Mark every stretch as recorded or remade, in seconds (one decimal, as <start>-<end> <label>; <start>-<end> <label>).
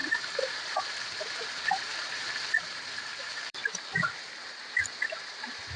0.0-5.8 remade